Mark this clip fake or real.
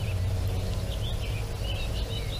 real